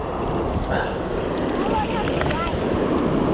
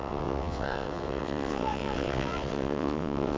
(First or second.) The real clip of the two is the first